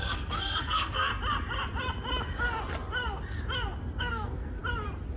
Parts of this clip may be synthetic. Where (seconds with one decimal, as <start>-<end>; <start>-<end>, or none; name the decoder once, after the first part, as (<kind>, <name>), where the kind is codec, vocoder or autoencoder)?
0.0-1.1 (codec, SNAC); 4.0-4.6